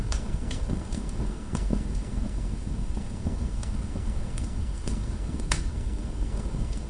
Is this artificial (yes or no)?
yes